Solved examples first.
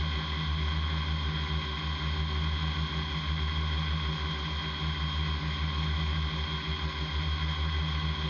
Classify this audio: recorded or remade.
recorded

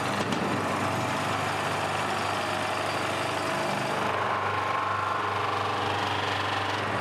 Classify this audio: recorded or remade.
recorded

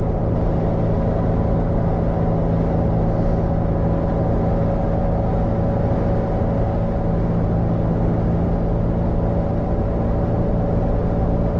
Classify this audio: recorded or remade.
recorded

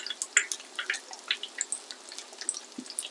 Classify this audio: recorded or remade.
recorded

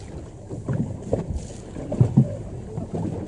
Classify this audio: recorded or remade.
recorded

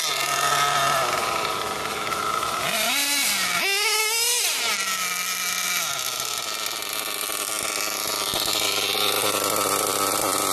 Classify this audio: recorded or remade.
recorded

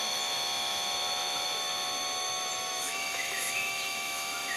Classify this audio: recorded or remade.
remade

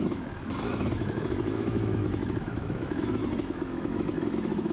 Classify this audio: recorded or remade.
remade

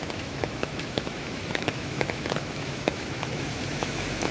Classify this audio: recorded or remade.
remade